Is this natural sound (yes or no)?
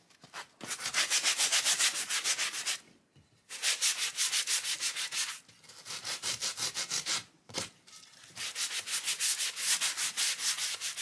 yes